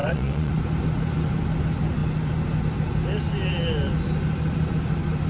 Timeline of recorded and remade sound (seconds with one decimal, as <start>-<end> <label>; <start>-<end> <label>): 0.0-0.5 remade; 0.5-5.3 recorded